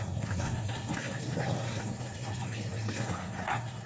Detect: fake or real fake